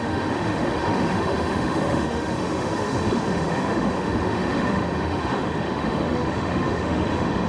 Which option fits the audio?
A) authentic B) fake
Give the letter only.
B